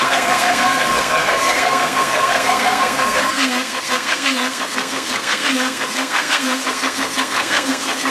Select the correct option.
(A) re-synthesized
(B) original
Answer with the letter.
A